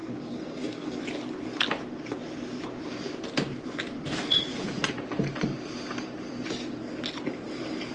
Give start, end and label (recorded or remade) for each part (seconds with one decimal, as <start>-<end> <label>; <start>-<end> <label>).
0.0-1.0 remade; 1.0-7.9 recorded